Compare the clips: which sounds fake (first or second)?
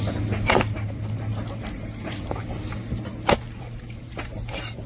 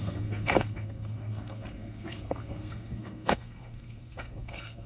second